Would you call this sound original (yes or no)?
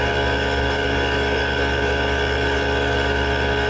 no